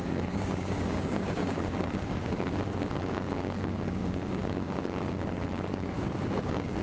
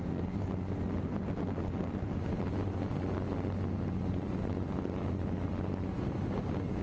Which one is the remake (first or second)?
first